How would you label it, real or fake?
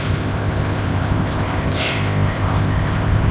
fake